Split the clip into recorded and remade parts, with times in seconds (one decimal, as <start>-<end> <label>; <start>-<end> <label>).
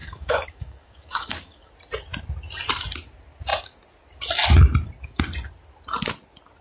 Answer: 0.0-1.7 remade; 1.7-6.6 recorded